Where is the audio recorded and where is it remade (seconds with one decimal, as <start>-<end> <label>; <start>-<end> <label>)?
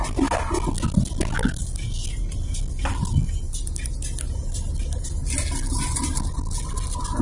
0.0-7.2 recorded